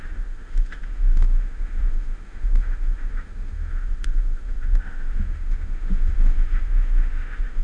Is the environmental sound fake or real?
fake